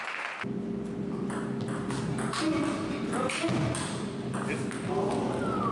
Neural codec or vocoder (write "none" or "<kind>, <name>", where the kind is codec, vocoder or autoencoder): none